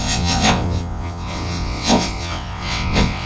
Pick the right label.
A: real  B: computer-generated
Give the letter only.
B